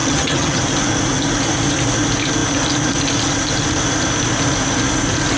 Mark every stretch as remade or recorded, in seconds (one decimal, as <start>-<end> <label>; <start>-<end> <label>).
0.0-0.6 remade; 0.6-5.4 recorded